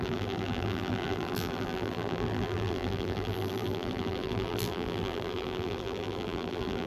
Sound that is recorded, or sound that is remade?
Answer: remade